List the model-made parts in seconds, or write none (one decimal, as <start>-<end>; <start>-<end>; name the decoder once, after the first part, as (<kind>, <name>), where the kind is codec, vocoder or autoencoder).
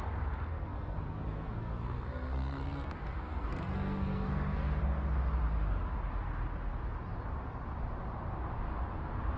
0.5-4.8 (codec, SNAC)